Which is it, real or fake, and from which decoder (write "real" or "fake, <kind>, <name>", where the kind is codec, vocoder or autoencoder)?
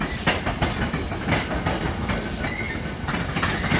real